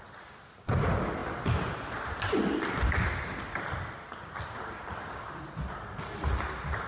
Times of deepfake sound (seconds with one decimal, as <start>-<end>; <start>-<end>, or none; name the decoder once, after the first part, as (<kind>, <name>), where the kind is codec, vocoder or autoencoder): none

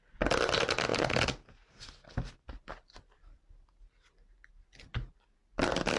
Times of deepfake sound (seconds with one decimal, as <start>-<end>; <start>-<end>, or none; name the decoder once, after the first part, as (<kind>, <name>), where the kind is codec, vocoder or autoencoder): none

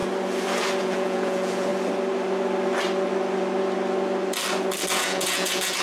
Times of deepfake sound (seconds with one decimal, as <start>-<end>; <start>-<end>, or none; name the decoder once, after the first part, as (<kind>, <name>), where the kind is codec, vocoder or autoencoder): 0.8-1.7 (vocoder, Vocos); 4.9-5.8

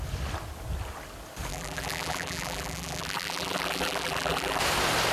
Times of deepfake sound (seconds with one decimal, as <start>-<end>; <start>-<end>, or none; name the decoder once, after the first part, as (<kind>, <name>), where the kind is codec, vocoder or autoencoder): 1.5-4.6 (vocoder, BigVGAN v2)